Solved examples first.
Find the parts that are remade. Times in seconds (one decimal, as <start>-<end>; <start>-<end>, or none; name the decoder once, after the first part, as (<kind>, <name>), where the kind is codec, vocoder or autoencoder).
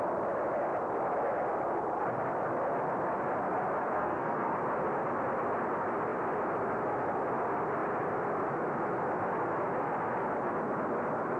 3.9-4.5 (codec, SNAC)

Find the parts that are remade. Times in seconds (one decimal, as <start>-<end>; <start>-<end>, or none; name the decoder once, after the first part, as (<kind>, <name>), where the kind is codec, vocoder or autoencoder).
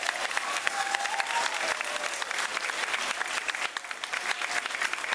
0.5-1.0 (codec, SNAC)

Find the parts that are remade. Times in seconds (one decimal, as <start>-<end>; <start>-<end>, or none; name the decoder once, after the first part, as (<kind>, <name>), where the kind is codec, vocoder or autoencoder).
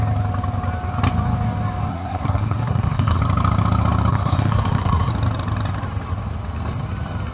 1.9-3.2 (codec, SNAC); 4.1-5.1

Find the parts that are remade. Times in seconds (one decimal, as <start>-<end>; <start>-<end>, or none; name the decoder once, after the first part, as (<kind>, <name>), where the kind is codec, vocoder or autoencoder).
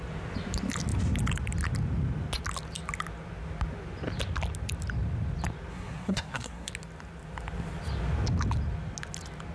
5.7-6.7 (codec, SNAC)